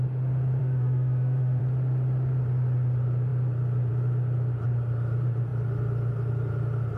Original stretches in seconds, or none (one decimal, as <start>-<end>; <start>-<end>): 0.0-0.6; 1.6-7.0